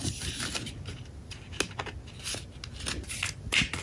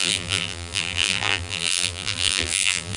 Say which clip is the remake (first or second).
second